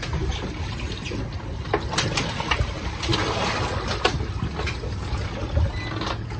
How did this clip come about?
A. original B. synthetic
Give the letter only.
A